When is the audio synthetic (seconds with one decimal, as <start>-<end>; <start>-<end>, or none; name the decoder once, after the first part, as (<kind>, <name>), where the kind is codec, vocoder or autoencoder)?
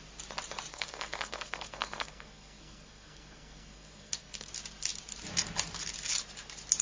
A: 0.7-4.5 (codec, SNAC)